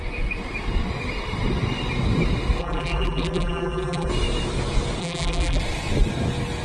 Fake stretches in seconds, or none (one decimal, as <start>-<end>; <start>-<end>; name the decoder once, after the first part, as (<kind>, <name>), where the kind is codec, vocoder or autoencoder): 2.6-4.1 (vocoder, BigVGAN v2); 5.0-5.6